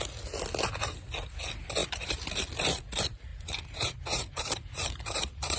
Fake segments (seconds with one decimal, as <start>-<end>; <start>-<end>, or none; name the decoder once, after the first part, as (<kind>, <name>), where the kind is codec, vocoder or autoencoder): 1.8-2.3 (vocoder, BigVGAN v2); 3.3-5.6